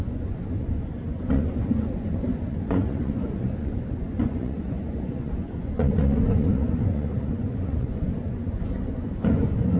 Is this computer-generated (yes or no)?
yes